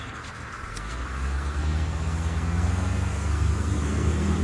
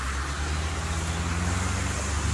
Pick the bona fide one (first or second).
second